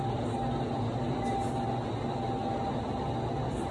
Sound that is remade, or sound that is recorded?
recorded